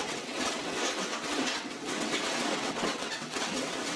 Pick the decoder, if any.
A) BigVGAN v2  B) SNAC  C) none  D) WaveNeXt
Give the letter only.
D